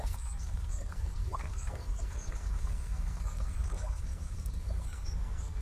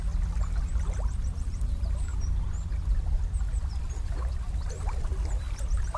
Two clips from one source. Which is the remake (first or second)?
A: first